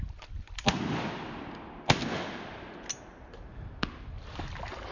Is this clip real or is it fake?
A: real